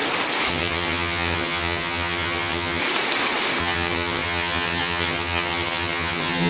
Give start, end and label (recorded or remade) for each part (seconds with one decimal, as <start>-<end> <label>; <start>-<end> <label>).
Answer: 0.0-0.5 recorded; 0.5-2.8 remade; 2.8-3.6 recorded; 3.6-6.5 remade